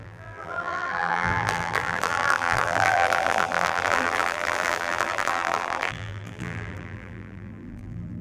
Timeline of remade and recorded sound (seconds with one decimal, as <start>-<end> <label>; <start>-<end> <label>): 0.0-8.2 remade